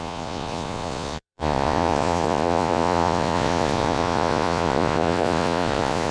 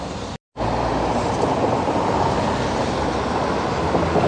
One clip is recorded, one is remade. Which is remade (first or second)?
first